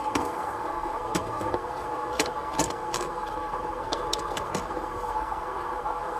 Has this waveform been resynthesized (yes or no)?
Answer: yes